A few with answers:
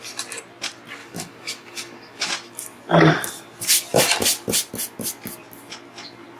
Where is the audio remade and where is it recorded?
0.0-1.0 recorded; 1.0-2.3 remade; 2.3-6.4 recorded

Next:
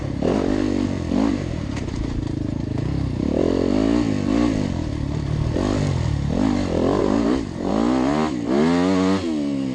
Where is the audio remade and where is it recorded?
0.0-1.3 recorded; 1.3-3.4 remade; 3.4-7.0 recorded; 7.0-7.7 remade; 7.7-9.7 recorded

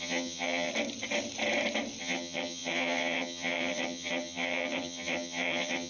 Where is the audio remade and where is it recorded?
0.0-0.7 remade; 0.7-2.0 recorded; 2.0-5.9 remade

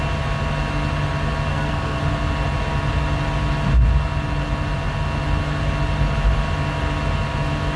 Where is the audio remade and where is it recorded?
0.0-1.5 recorded; 1.5-2.0 remade; 2.0-7.8 recorded

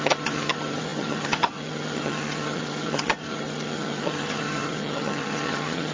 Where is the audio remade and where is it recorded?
0.0-5.9 remade

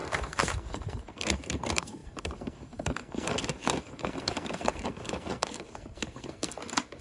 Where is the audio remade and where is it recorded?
0.0-7.0 remade